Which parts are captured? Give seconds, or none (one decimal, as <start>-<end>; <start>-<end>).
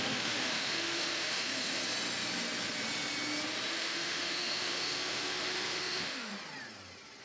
1.8-3.7; 6.3-7.2